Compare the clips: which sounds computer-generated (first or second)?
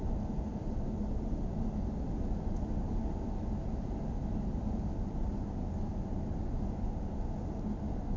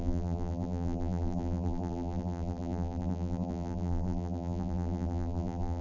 second